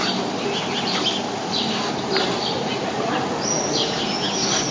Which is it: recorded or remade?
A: recorded